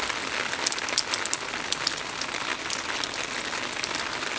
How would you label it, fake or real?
real